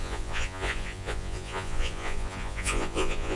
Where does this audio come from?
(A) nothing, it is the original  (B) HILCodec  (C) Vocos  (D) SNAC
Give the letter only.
C